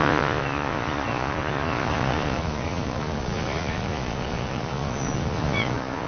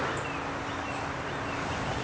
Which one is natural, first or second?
second